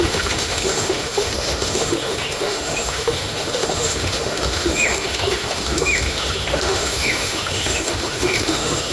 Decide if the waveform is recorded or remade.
remade